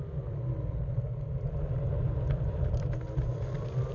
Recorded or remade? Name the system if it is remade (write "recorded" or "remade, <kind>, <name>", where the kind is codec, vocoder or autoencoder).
recorded